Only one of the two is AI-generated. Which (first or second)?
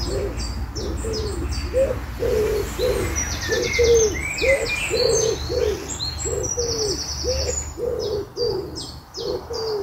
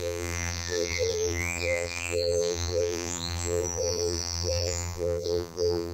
second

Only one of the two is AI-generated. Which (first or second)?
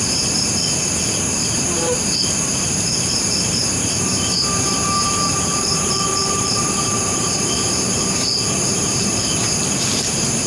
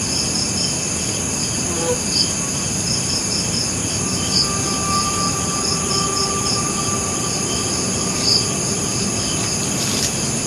first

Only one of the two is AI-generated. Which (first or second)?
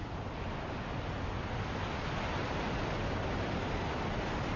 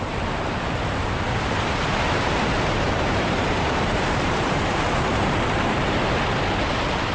second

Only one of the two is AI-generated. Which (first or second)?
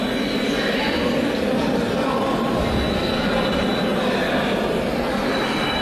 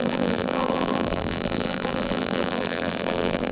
second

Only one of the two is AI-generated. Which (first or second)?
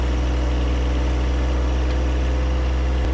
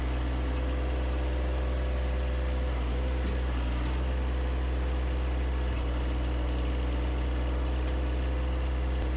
second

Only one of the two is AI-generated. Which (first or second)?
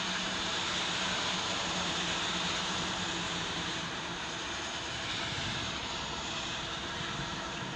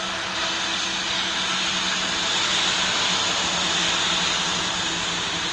first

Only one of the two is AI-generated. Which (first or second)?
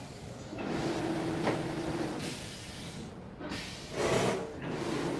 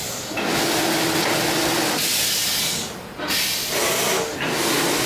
first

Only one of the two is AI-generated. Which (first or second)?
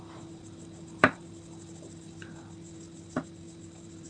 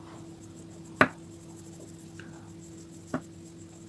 first